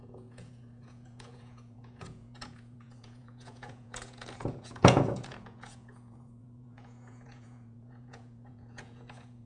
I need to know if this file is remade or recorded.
remade